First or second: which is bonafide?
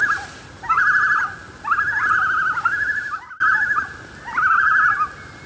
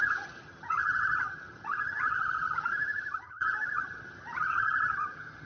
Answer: first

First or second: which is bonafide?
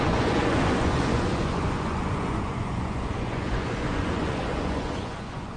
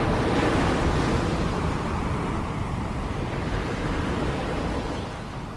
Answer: second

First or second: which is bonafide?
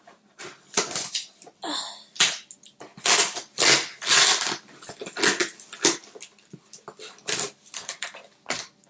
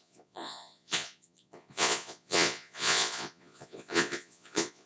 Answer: first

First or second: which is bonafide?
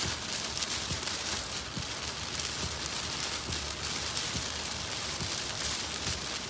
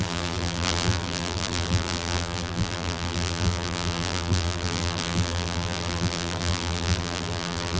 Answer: first